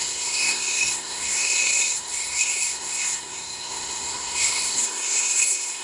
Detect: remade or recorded remade